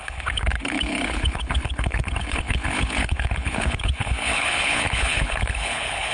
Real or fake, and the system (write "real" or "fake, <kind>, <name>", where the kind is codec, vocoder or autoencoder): fake, codec, HILCodec